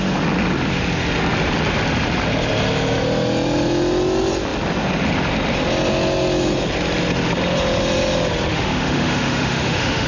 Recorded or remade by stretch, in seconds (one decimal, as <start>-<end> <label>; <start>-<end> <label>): 0.0-8.5 recorded; 8.5-10.1 remade